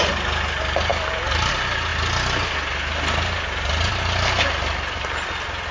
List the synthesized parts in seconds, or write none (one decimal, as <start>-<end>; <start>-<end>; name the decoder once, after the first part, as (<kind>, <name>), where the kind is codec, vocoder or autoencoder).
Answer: none